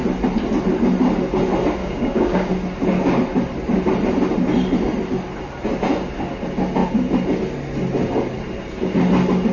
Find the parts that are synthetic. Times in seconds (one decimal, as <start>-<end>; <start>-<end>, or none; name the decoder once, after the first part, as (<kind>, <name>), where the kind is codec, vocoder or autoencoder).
1.8-2.5 (codec, DAC)